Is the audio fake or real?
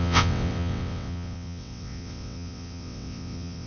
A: fake